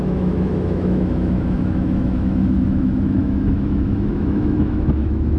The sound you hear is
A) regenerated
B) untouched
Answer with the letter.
A